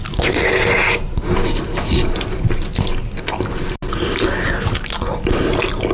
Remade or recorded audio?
recorded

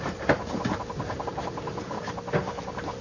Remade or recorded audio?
recorded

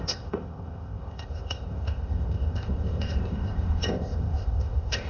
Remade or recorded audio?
remade